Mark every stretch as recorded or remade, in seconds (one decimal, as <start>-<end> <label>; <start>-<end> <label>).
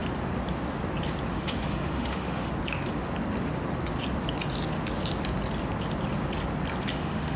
0.0-1.3 recorded; 1.3-2.5 remade; 2.5-6.9 recorded; 6.9-7.4 remade